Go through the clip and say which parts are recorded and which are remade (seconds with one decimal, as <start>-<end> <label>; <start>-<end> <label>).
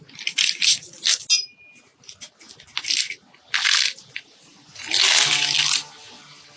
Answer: 0.0-6.6 recorded